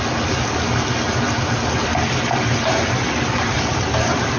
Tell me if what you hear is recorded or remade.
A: recorded